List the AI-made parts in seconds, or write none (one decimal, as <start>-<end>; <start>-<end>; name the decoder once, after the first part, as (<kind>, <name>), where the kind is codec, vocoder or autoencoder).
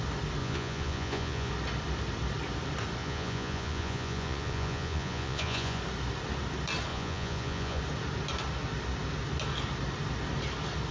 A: 0.4-1.5 (vocoder, Vocos); 3.0-5.8; 6.9-7.8